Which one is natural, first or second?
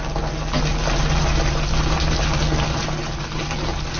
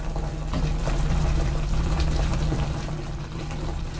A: first